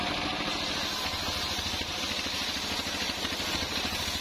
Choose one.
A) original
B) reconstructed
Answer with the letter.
A